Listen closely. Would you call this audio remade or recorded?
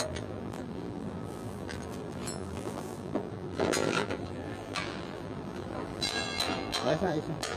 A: remade